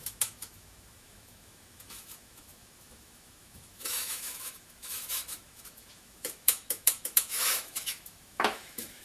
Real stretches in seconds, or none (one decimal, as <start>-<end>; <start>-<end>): none